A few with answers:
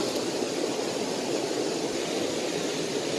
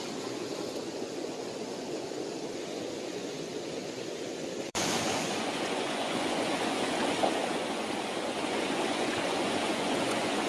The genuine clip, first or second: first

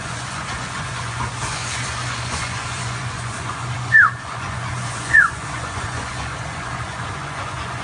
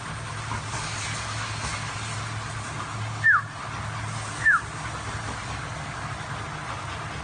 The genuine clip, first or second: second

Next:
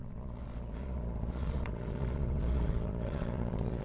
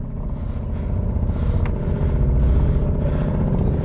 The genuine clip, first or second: second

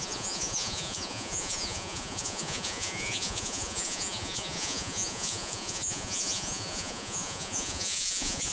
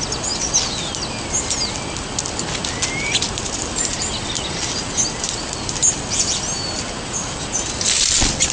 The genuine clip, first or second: second